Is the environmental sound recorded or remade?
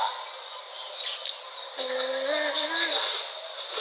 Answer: recorded